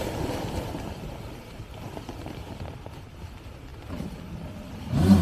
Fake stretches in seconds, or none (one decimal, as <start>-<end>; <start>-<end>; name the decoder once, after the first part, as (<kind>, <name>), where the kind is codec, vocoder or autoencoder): none